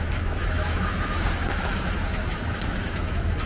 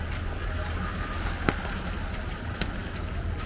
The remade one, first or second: first